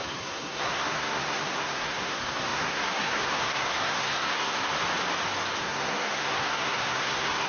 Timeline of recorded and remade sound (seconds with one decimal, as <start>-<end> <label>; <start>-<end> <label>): 0.0-4.7 remade; 4.7-5.6 recorded; 5.6-7.5 remade